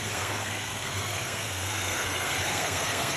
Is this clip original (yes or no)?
no